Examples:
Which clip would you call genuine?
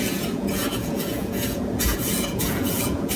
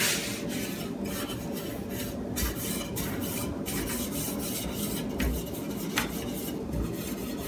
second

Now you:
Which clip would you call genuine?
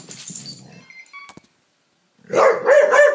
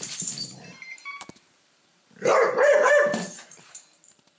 first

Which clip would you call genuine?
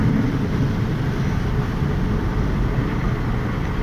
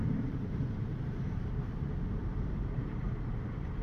first